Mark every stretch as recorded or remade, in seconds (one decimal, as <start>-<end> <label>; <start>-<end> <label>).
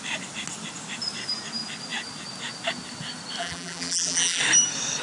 0.0-3.4 recorded; 3.4-4.4 remade; 4.4-5.0 recorded